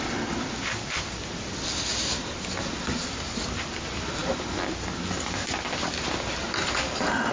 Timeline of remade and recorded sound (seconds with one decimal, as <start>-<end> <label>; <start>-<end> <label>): 0.0-7.3 recorded